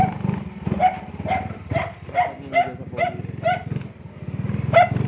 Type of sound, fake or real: real